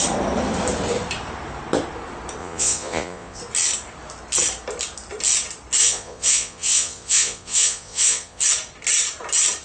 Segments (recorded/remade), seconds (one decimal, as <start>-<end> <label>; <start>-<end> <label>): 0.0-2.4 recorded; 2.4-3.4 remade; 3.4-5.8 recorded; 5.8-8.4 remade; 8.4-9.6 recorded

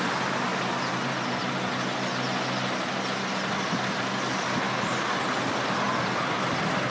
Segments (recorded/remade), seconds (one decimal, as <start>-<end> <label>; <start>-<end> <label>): 0.0-6.9 recorded

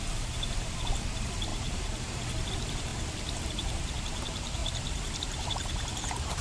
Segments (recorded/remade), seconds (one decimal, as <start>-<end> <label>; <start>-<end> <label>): 0.0-2.9 remade; 2.9-3.4 recorded; 3.4-4.6 remade; 4.6-5.2 recorded; 5.2-6.4 remade

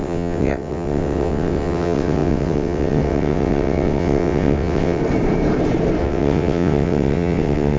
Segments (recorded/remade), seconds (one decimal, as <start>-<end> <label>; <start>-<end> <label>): 0.0-5.0 remade; 5.0-6.0 recorded; 6.0-7.8 remade

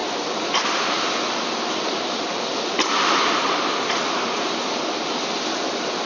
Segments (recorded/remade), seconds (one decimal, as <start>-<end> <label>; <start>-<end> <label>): 0.0-6.1 recorded

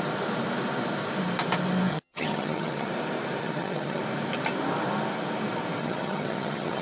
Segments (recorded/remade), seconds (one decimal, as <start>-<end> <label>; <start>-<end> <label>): 0.0-1.9 recorded; 1.9-2.9 remade; 2.9-3.4 recorded; 3.4-4.0 remade; 4.0-5.8 recorded; 5.8-6.8 remade

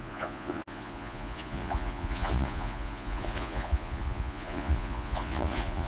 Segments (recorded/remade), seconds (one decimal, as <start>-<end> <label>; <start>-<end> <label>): 0.0-5.9 remade

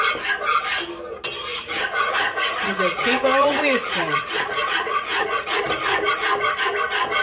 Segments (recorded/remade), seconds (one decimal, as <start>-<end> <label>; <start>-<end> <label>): 0.0-1.5 recorded; 1.5-5.6 remade; 5.6-7.2 recorded